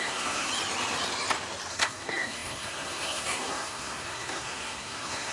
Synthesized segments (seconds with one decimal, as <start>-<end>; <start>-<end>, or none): 0.0-0.5; 1.7-5.3